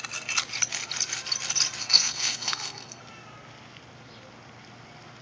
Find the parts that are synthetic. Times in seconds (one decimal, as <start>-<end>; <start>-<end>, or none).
1.8-3.0